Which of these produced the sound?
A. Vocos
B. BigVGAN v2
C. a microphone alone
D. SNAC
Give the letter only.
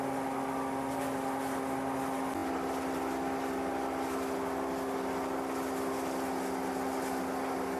C